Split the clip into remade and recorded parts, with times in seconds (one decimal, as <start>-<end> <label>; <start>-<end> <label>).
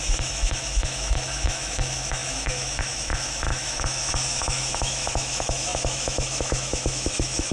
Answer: 0.0-7.5 remade